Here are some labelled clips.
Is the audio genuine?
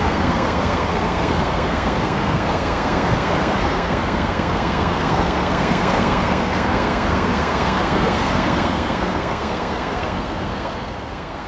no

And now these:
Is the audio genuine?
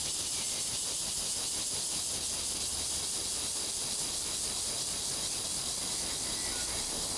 yes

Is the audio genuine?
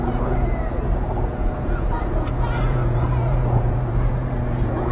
no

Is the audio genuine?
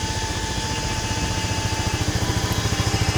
yes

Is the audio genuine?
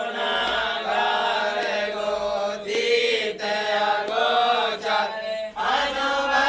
yes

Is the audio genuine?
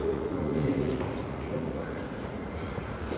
no